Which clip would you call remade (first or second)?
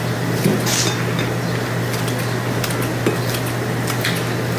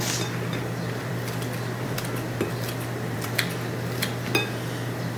second